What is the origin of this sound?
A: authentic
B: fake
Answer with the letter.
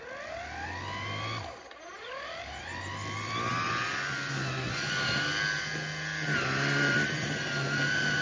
A